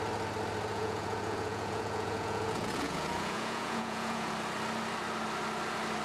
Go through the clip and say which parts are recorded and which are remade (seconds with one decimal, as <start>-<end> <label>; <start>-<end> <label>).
0.0-0.7 recorded; 0.7-4.3 remade; 4.3-6.0 recorded